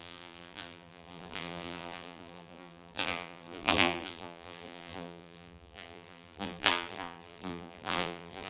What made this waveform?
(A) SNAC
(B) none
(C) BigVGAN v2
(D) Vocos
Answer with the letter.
C